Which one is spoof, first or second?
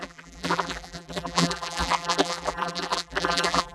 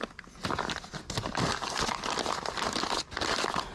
first